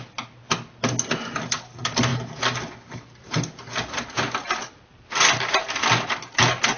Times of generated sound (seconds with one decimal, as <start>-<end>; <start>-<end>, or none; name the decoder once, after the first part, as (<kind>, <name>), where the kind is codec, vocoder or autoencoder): none